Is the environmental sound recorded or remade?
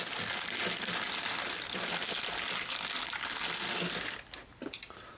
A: recorded